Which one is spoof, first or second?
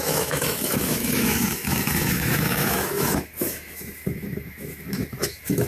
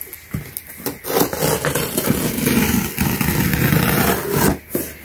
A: first